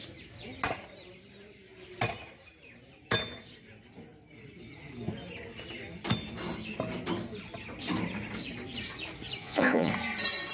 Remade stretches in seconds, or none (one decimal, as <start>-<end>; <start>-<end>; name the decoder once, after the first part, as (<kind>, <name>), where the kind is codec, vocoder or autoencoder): 9.4-9.9 (vocoder, Vocos)